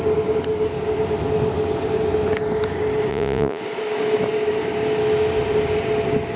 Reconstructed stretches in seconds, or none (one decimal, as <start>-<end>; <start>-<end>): 3.1-3.6